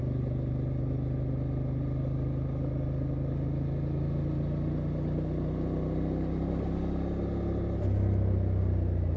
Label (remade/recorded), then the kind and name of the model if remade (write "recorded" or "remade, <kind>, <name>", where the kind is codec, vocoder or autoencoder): recorded